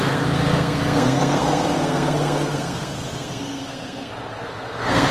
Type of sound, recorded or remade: remade